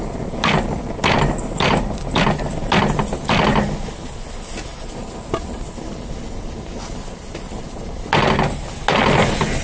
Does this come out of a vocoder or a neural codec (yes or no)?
no